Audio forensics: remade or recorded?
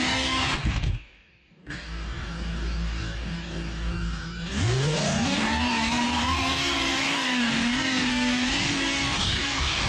remade